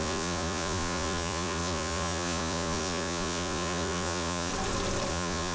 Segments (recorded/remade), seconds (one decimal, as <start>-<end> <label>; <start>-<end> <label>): 0.0-4.5 remade; 4.5-5.1 recorded; 5.1-5.5 remade